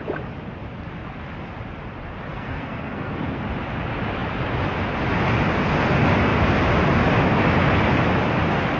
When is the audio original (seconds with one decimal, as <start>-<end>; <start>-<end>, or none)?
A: 0.0-2.3; 3.4-8.8